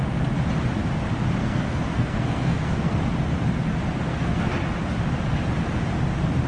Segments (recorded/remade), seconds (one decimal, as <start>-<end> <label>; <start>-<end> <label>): 0.0-1.4 recorded; 1.4-3.0 remade; 3.0-4.0 recorded; 4.0-4.5 remade; 4.5-6.5 recorded